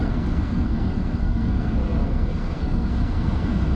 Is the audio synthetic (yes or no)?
yes